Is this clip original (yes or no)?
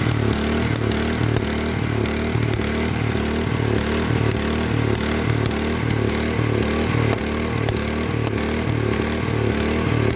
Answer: yes